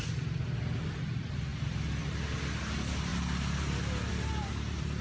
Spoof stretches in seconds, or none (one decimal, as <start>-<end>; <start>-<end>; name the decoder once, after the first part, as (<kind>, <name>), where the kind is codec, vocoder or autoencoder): none